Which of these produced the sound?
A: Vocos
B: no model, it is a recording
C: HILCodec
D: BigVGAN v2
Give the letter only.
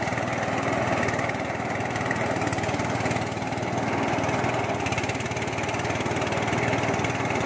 B